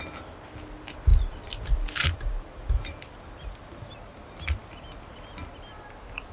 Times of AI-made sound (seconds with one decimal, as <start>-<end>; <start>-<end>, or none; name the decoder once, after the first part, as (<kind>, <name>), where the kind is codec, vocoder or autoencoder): 1.1-3.9 (vocoder, BigVGAN v2)